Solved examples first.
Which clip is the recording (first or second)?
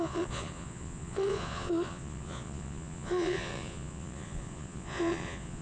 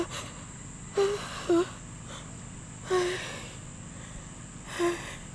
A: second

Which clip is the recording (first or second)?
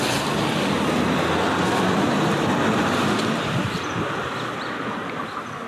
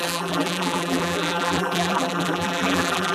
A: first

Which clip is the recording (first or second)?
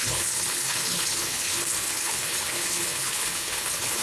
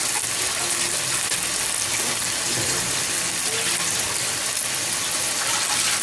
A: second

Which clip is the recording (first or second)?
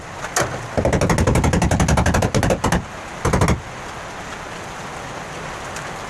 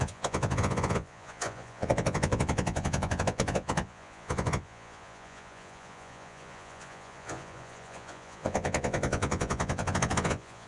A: first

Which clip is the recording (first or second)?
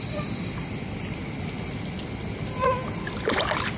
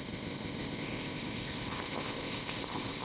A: first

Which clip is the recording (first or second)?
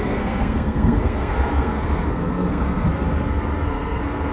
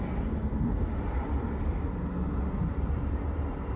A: second